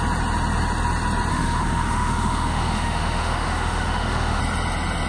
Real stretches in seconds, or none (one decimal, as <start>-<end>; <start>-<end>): 0.0-1.3; 4.4-5.1